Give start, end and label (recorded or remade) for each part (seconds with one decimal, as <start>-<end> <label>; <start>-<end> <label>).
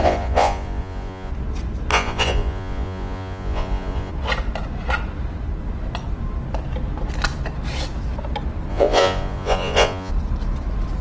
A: 0.0-1.3 remade; 1.3-1.9 recorded; 1.9-4.1 remade; 4.1-8.7 recorded; 8.7-10.1 remade; 10.1-11.0 recorded